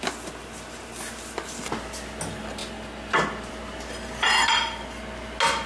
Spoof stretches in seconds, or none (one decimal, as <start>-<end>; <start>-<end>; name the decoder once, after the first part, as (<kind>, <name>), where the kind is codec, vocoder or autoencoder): none